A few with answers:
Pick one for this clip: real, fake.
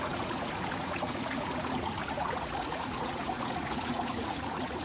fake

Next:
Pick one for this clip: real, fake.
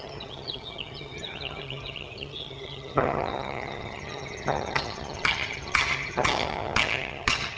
fake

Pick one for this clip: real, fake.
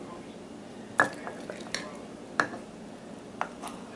real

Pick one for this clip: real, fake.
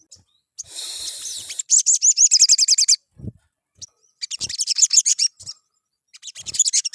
real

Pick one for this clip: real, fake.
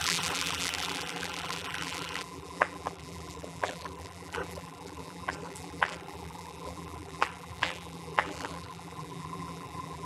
fake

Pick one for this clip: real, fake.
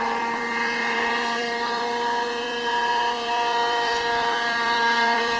fake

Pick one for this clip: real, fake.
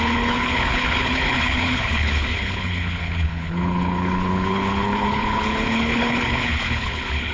fake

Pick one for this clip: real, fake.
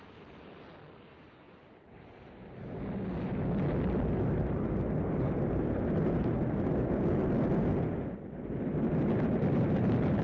real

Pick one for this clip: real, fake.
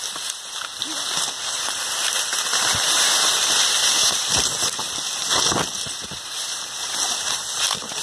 real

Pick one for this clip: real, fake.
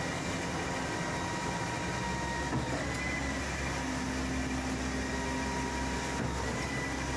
real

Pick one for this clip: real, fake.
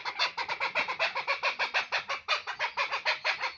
real